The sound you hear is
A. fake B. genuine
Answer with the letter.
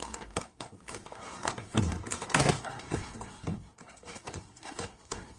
A